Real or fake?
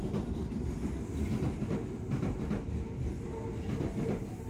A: real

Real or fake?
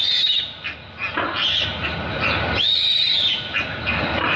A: real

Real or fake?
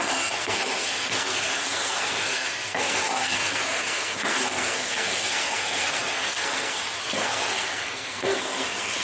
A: fake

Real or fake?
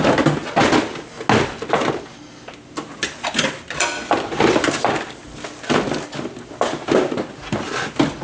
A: real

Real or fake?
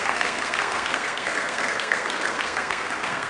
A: fake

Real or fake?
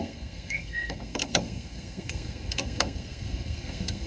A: fake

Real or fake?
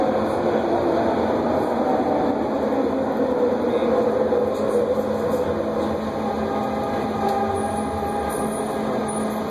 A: real